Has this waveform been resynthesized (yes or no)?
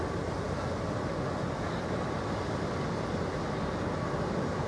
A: no